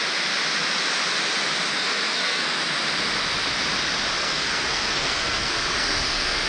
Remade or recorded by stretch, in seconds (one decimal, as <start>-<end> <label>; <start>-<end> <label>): 0.0-1.7 recorded; 1.7-2.6 remade; 2.6-4.2 recorded; 4.2-6.5 remade